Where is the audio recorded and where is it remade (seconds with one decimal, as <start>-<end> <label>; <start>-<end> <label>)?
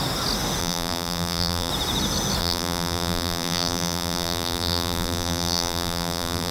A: 0.0-0.6 recorded; 0.6-1.7 remade; 1.7-2.4 recorded; 2.4-6.5 remade